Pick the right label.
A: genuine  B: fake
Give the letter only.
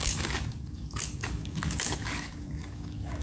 B